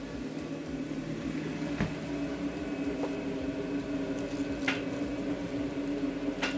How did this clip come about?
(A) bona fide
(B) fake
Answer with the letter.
A